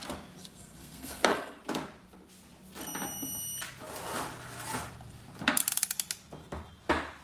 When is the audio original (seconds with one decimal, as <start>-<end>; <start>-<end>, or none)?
0.0-0.4; 1.6-7.2